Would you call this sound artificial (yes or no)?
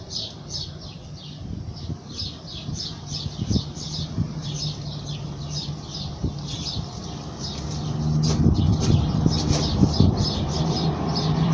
no